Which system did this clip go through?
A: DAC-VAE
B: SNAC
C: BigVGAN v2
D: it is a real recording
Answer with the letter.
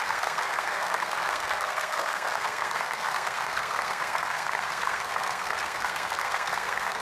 B